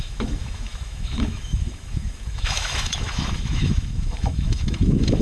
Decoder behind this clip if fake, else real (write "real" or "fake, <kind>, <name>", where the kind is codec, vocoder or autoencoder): fake, autoencoder, DAC-VAE